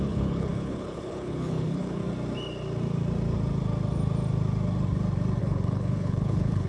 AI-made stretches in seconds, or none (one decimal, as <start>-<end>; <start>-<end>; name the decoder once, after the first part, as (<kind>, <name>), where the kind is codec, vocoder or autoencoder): 0.0-2.0 (codec, HILCodec); 5.4-6.7